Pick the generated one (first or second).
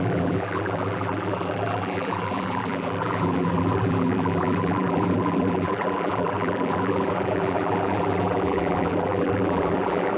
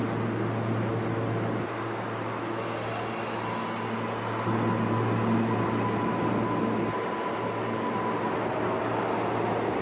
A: first